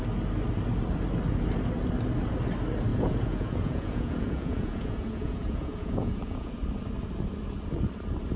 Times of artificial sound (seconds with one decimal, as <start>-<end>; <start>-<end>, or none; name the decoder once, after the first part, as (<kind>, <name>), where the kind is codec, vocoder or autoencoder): 2.9-6.5 (vocoder, Vocos)